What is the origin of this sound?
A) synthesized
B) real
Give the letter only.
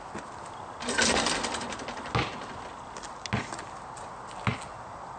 B